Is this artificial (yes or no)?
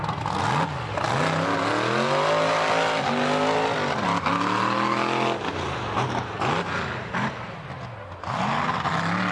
no